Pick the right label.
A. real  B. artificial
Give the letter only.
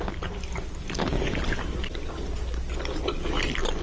A